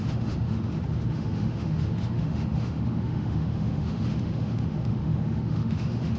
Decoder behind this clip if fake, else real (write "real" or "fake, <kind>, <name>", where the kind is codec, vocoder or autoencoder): fake, autoencoder, DAC-VAE